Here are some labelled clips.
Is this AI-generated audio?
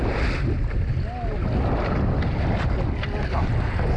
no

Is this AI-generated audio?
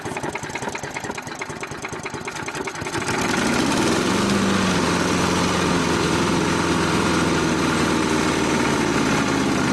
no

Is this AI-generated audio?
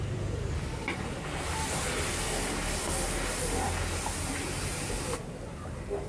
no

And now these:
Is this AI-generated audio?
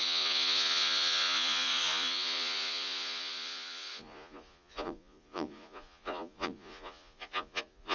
yes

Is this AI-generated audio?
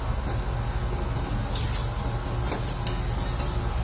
no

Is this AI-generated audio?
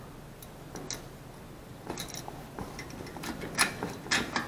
no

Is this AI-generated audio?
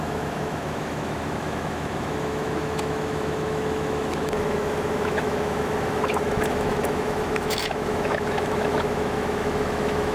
yes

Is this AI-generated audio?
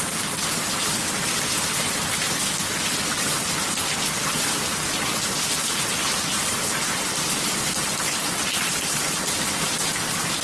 no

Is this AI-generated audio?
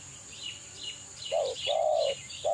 yes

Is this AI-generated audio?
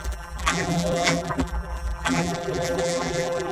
yes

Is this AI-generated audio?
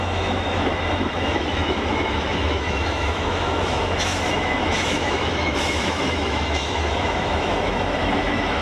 yes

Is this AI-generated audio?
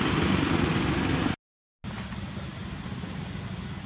no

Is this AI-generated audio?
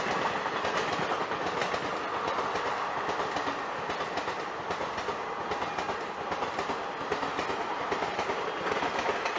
no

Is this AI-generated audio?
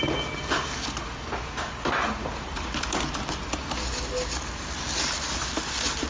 no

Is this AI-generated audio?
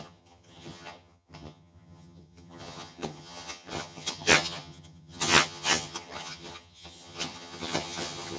yes